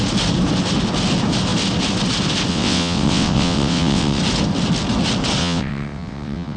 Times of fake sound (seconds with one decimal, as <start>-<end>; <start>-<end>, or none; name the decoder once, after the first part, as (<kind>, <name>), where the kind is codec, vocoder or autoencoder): 2.5-4.2 (vocoder, WaveNeXt); 5.4-6.6